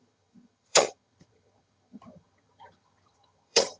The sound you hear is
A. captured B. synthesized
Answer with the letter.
B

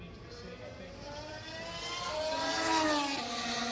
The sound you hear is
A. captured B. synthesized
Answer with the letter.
A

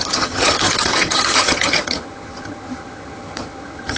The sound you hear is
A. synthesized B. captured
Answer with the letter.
A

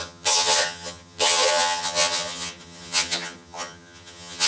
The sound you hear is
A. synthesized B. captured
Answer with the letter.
A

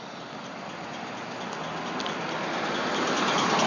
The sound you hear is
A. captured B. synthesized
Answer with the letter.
A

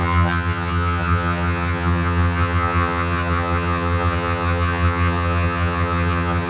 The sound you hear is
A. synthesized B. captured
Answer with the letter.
A